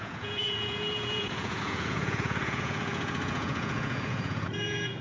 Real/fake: fake